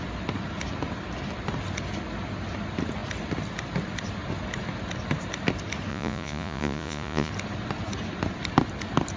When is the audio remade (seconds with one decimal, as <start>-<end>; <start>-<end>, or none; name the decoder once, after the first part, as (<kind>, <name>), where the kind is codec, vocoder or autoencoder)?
5.9-7.3 (vocoder, Vocos)